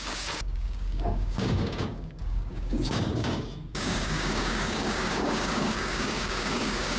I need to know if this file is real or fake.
fake